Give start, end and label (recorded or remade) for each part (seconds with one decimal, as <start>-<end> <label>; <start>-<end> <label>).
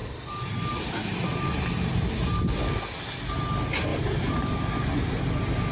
0.0-3.9 recorded; 3.9-5.7 remade